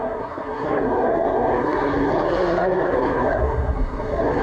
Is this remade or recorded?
remade